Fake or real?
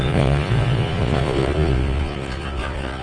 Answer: fake